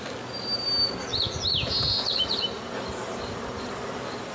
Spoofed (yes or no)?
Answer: no